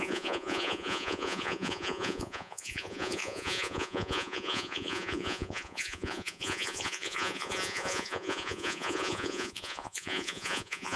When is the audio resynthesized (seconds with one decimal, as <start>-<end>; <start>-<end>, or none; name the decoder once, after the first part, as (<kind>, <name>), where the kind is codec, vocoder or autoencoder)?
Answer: 0.0-11.0 (vocoder, Vocos)